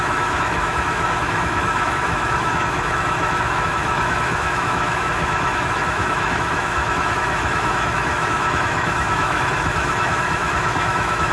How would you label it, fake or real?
fake